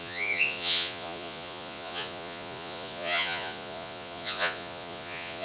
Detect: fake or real fake